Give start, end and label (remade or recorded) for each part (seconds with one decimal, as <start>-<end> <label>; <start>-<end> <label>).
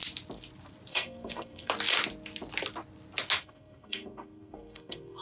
0.0-0.9 recorded; 0.9-1.7 remade; 1.7-3.4 recorded; 3.4-5.2 remade